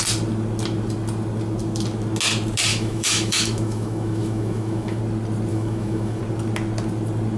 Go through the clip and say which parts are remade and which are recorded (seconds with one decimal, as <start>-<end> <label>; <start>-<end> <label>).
0.0-2.7 recorded; 2.7-5.0 remade; 5.0-5.5 recorded; 5.5-6.2 remade; 6.2-7.4 recorded